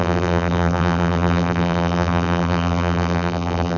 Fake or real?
fake